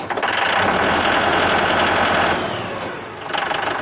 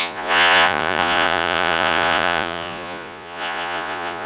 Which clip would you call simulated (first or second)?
second